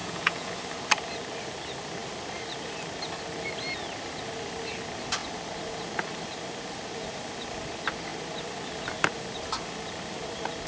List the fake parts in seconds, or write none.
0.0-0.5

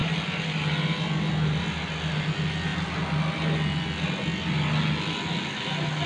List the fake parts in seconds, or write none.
none

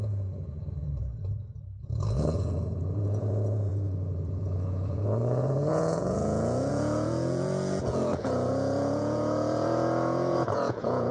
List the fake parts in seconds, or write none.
0.0-11.1

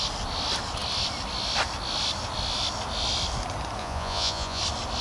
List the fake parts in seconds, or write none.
3.8-4.6

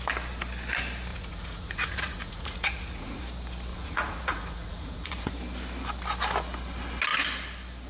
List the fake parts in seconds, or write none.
1.1-3.2; 3.7-5.3

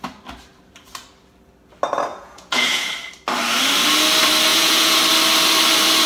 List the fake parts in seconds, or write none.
2.1-2.9; 4.5-5.0

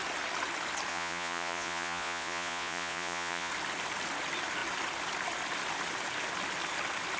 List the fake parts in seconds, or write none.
0.9-3.5

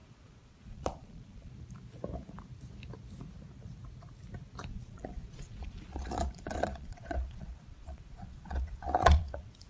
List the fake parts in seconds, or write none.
0.0-1.5; 4.7-9.7